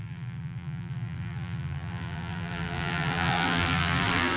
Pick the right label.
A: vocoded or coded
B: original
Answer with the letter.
A